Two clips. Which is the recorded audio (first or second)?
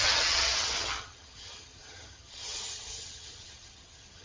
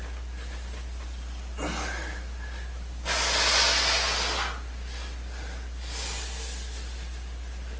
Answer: second